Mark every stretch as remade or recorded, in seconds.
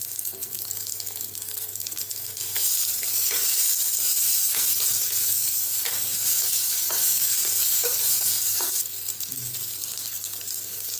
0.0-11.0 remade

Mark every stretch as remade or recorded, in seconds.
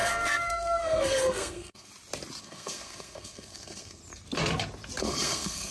0.0-1.9 remade; 1.9-2.4 recorded; 2.4-4.0 remade; 4.0-5.0 recorded; 5.0-5.7 remade